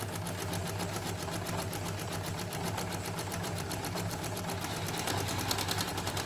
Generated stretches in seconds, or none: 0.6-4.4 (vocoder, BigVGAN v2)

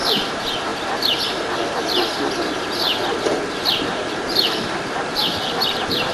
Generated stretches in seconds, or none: 0.0-0.7 (vocoder, BigVGAN v2); 3.7-6.1

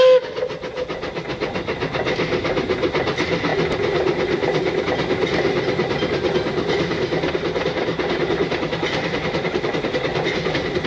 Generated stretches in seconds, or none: none

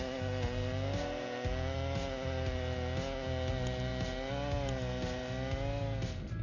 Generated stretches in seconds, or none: none

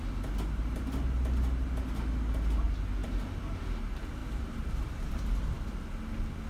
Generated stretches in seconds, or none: 4.2-5.1 (vocoder, BigVGAN v2)

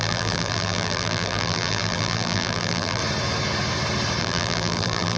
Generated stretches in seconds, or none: 0.0-3.0 (vocoder, BigVGAN v2); 4.2-5.2

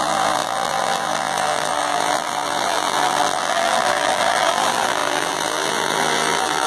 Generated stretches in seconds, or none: 0.0-6.7 (vocoder, BigVGAN v2)

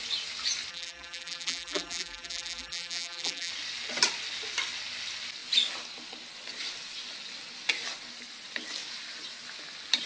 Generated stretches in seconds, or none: 0.7-3.5 (vocoder, BigVGAN v2)